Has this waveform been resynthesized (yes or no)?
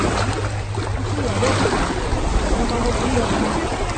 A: no